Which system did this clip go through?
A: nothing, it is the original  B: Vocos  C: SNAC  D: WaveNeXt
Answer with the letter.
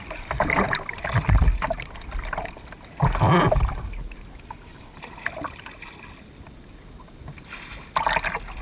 A